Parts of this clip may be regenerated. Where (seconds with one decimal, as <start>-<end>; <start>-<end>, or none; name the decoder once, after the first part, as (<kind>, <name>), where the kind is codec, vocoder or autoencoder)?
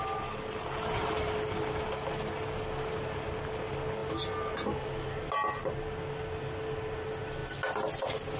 none